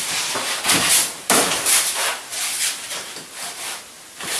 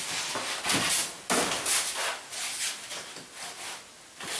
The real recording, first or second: second